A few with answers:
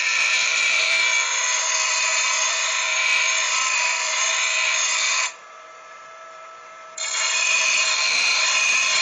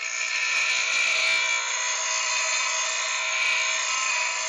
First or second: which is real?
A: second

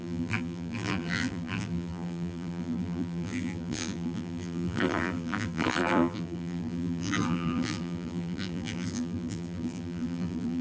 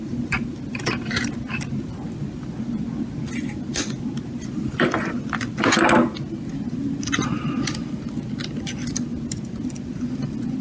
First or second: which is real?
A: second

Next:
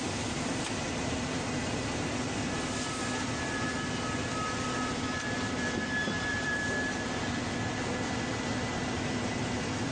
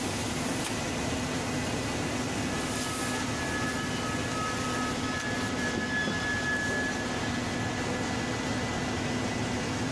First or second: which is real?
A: second